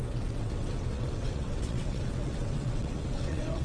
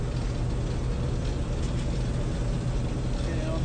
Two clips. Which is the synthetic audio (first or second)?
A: first